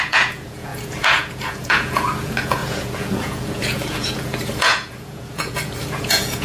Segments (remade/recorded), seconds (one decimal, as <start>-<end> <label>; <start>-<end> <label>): 0.0-6.4 remade